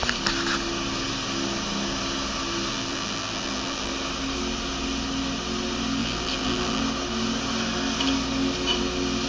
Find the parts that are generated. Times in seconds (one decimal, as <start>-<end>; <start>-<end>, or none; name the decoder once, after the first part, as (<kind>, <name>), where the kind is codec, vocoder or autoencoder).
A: 2.7-3.9 (vocoder, BigVGAN v2); 6.0-6.8